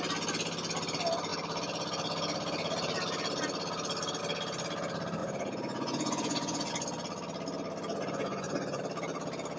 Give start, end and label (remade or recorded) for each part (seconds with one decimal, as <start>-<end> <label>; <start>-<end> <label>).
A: 0.0-5.2 recorded; 5.2-6.7 remade; 6.7-7.9 recorded; 7.9-8.8 remade; 8.8-9.6 recorded